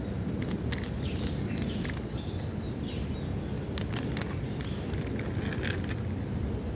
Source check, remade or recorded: recorded